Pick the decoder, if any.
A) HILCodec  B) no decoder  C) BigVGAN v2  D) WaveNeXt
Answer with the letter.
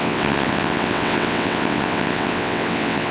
D